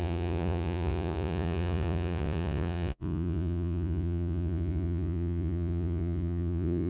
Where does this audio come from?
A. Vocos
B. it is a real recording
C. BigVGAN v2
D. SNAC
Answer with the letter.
A